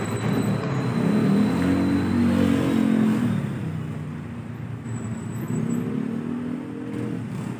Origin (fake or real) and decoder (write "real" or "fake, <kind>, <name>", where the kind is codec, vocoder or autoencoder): real